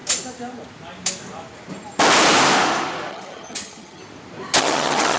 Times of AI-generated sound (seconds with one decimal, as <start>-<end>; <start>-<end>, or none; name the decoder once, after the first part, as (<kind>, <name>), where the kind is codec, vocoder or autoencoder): 3.1-4.0 (vocoder, HiFi-GAN); 4.6-5.2